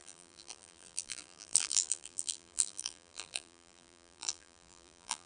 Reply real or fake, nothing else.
fake